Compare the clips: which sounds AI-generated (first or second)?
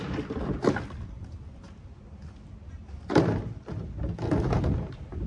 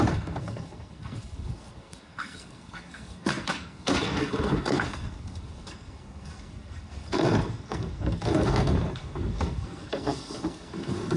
second